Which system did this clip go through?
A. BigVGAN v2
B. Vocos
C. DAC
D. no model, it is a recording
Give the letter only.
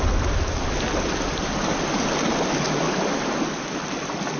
D